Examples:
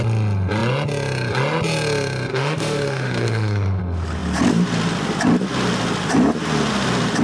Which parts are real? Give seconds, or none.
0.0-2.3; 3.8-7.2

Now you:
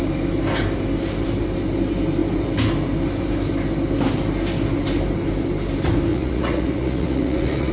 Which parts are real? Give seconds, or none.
0.0-6.1

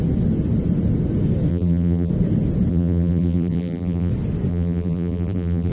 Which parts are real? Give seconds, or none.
0.0-1.5; 2.1-2.7; 4.1-4.5